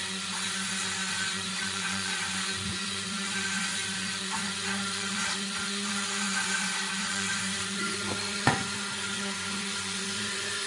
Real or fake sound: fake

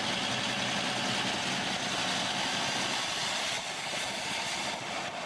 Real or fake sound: real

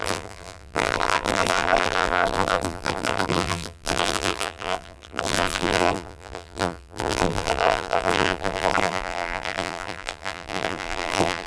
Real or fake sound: fake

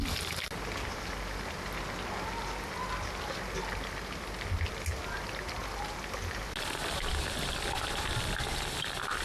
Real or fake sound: real